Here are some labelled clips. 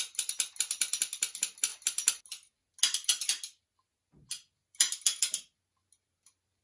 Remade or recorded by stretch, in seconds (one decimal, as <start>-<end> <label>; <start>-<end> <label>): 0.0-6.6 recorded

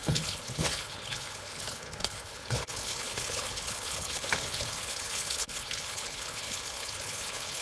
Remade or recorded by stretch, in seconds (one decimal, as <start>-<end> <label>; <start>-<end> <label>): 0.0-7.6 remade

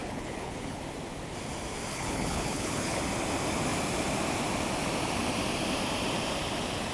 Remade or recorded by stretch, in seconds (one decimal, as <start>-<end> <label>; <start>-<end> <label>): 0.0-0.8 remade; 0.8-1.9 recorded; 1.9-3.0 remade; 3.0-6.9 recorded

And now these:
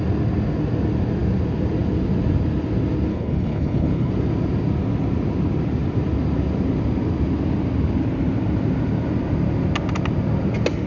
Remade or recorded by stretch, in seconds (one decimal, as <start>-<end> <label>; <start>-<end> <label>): 0.0-3.1 recorded; 3.1-4.1 remade; 4.1-10.9 recorded

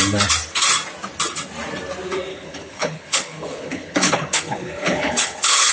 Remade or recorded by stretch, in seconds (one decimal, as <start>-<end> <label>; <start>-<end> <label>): 0.0-2.3 recorded; 2.3-5.7 remade

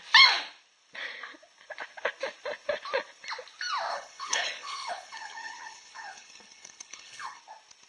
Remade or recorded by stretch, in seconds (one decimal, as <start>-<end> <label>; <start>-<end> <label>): 0.0-3.9 recorded; 3.9-7.4 remade; 7.4-7.9 recorded

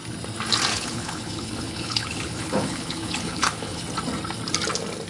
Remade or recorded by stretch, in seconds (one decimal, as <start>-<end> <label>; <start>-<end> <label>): 0.0-0.7 recorded; 0.7-3.8 remade; 3.8-5.1 recorded

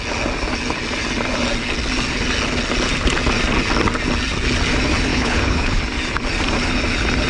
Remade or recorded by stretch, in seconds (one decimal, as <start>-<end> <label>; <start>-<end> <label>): 0.0-5.1 recorded; 5.1-5.8 remade; 5.8-7.3 recorded